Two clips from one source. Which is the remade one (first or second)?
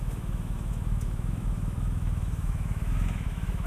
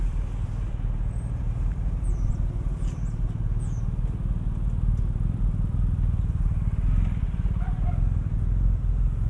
first